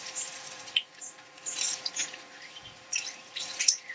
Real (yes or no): no